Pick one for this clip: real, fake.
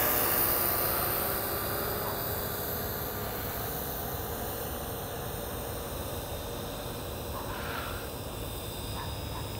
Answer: real